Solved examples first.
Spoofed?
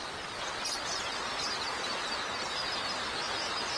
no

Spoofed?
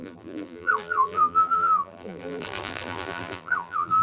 yes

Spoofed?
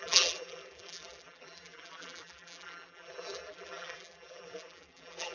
yes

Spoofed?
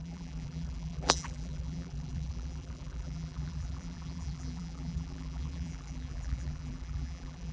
yes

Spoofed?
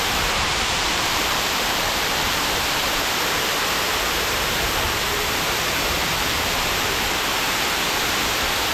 yes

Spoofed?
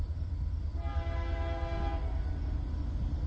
no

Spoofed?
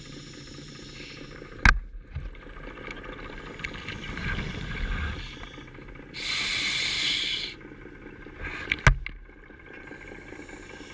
no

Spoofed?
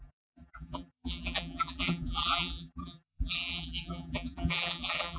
yes